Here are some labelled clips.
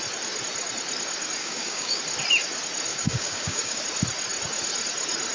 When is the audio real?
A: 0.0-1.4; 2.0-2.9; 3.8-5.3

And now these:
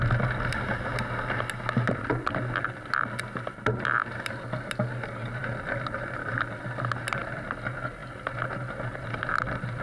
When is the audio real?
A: 0.0-9.8

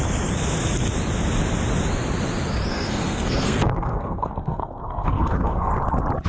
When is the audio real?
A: 0.0-2.7; 5.7-6.3

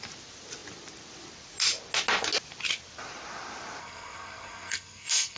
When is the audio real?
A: 0.0-3.8

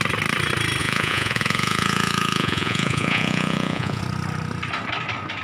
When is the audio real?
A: 0.0-0.8; 4.0-5.4